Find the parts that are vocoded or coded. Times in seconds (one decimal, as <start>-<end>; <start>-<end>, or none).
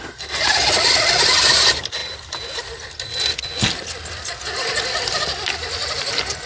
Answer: none